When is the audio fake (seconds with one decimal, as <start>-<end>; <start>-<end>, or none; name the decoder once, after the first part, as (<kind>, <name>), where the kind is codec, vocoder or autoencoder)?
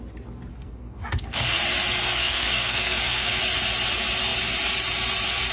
0.5-1.6 (codec, SNAC); 2.0-3.4